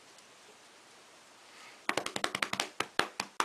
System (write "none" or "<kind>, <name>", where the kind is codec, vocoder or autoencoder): none